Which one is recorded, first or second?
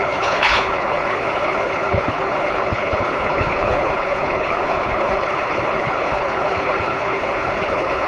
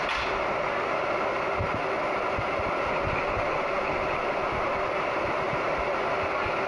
second